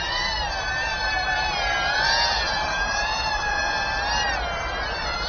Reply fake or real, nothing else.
fake